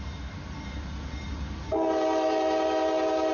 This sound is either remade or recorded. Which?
recorded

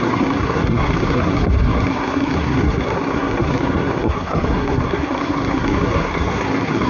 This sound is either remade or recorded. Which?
remade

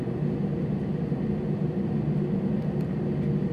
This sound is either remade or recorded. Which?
recorded